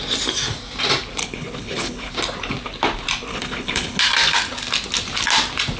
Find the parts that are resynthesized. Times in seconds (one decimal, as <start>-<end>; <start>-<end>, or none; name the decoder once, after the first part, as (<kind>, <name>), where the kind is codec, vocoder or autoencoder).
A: 1.2-2.1 (codec, HILCodec); 3.3-4.0